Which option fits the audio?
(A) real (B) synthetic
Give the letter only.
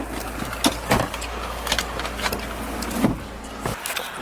A